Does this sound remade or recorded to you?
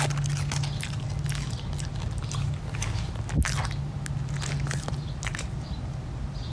recorded